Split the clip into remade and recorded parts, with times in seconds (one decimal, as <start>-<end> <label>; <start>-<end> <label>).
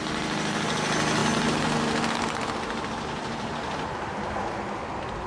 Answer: 0.0-5.3 recorded